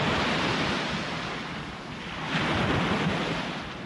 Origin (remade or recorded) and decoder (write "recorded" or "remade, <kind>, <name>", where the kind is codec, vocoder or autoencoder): recorded